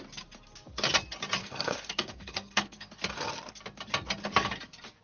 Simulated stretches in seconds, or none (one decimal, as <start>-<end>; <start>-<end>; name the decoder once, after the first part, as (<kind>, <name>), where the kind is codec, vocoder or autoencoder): 1.4-2.9 (codec, SNAC)